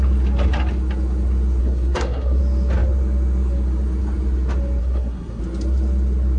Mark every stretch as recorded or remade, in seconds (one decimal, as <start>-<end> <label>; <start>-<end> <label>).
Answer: 0.0-1.6 recorded; 1.6-2.4 remade; 2.4-4.8 recorded; 4.8-5.4 remade; 5.4-6.4 recorded